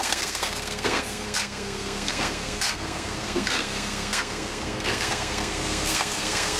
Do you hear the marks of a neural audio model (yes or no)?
yes